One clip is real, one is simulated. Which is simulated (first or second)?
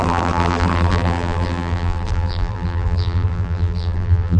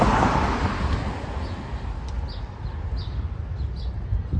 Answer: first